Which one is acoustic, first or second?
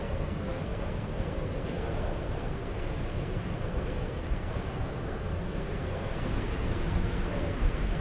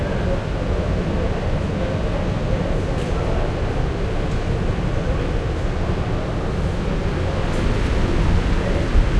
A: second